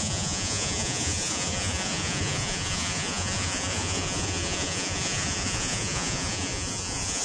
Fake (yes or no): yes